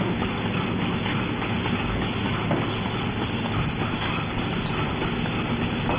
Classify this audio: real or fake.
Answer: real